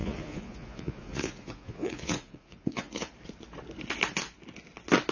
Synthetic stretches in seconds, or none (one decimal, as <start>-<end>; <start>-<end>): 0.0-3.1